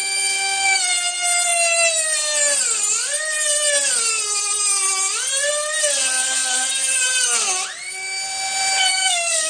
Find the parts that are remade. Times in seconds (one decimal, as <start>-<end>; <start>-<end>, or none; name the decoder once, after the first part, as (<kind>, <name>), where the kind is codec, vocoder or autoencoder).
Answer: 0.0-0.8 (codec, DAC); 8.9-9.5

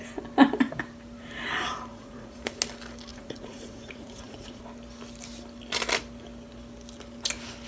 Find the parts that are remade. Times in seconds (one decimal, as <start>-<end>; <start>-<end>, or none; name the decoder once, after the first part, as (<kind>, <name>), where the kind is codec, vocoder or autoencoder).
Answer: 1.9-2.6 (vocoder, Vocos); 3.1-4.6

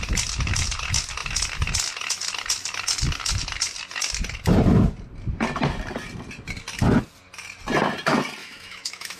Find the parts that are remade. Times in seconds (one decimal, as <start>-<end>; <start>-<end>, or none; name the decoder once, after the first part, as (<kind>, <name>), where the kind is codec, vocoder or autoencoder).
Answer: 8.4-9.2 (autoencoder, DAC-VAE)

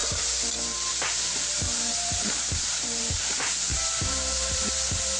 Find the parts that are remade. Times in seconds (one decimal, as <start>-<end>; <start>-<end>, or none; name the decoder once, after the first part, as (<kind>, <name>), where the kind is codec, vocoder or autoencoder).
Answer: 0.0-3.1 (vocoder, BigVGAN v2); 3.7-5.2